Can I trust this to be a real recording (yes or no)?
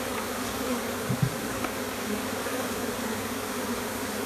no